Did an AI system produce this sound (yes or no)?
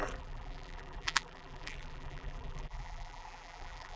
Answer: yes